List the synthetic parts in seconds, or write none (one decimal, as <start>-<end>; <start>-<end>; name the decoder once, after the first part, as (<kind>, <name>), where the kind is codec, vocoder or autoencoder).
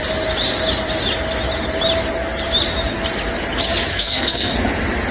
3.9-4.5 (codec, SNAC)